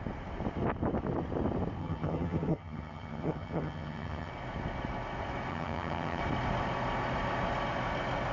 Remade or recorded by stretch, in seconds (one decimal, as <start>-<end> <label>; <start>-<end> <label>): 0.0-1.8 recorded; 1.8-4.3 remade; 4.3-5.5 recorded; 5.5-6.2 remade; 6.2-8.3 recorded